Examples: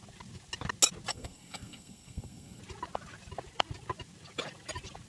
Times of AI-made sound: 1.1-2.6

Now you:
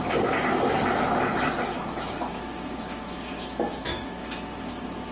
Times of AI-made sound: 1.7-5.1